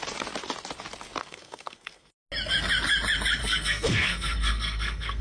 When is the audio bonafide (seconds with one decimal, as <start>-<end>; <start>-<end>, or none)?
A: 0.0-1.2; 2.1-3.4